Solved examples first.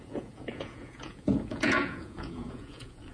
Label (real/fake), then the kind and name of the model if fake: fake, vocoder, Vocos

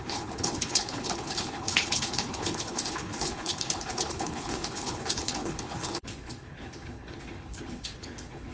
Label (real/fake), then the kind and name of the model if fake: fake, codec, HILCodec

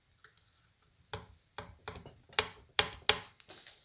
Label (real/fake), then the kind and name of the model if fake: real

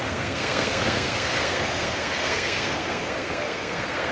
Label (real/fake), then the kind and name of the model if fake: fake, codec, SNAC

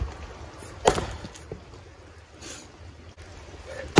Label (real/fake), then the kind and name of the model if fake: real